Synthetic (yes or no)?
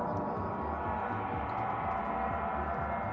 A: no